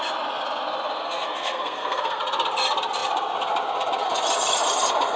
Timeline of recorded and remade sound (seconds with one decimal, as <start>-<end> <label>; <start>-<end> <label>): 0.0-1.0 recorded; 1.0-2.2 remade; 2.2-5.2 recorded